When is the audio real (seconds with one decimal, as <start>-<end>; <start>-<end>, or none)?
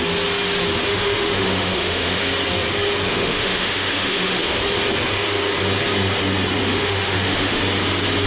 0.0-0.9; 2.2-3.1; 4.6-6.6; 7.6-8.3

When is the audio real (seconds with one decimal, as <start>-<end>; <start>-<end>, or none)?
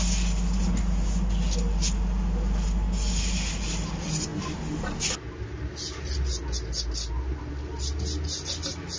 0.0-9.0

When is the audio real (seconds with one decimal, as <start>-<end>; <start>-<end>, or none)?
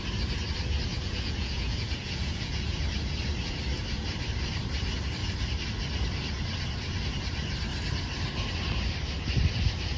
0.0-0.9; 2.8-10.0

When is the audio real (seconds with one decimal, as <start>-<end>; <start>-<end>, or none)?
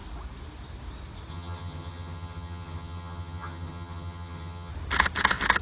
0.0-1.3; 4.7-5.6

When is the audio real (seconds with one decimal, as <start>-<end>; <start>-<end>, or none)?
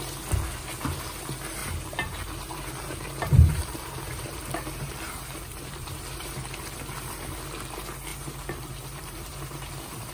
0.0-1.6; 5.1-5.5; 6.0-8.1; 9.7-10.1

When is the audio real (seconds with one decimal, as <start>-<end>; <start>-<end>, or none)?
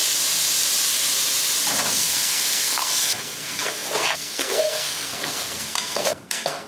0.0-1.9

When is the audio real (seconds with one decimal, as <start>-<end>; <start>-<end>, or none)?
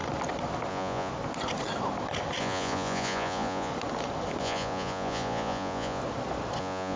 0.0-0.7; 1.1-2.4; 3.7-4.4; 6.0-6.6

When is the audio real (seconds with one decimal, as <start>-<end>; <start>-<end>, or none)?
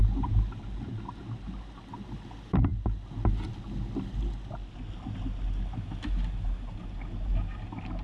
0.0-8.0